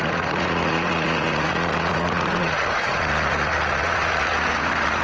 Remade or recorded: remade